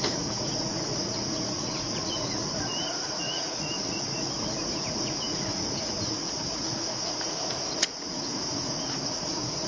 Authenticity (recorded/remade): remade